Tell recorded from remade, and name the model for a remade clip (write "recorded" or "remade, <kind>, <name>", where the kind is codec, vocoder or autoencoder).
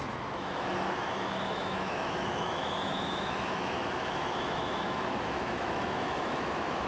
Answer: remade, autoencoder, DAC-VAE